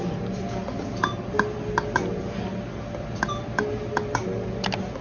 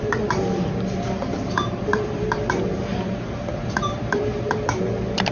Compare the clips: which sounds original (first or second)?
first